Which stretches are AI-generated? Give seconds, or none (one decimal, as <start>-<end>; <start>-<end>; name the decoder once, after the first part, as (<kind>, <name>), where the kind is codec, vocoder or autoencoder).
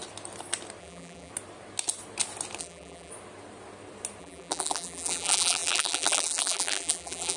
0.8-1.3 (vocoder, BigVGAN v2); 2.6-3.1; 4.2-7.4